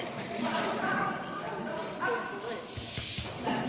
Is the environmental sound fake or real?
real